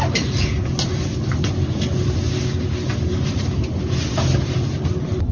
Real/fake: real